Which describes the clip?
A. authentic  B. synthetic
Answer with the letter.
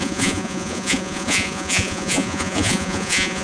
B